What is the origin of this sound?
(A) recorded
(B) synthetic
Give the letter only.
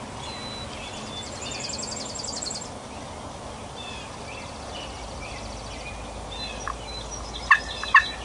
A